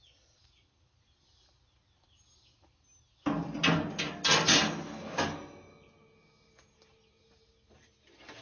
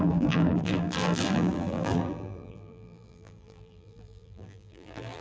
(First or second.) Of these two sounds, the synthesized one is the second